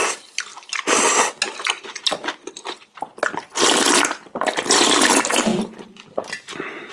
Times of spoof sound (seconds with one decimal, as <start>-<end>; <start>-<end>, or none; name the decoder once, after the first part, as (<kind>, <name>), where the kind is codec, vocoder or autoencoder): none